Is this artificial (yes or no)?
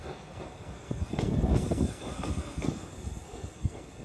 yes